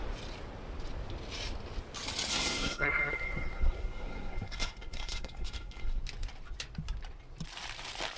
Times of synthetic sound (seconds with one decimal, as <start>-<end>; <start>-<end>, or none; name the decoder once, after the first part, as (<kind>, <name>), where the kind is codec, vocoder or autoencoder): 2.3-6.0 (codec, SNAC)